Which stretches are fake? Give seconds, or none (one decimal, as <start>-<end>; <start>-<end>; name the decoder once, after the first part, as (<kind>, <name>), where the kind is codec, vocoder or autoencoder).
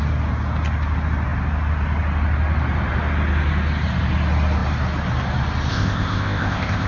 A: 5.7-6.9 (codec, ZipCodec)